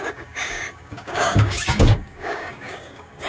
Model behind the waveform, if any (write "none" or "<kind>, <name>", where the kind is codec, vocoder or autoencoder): codec, DAC